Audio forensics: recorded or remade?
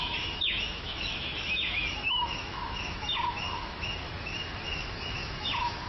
remade